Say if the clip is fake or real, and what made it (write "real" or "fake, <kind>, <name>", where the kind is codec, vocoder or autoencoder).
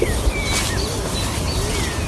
real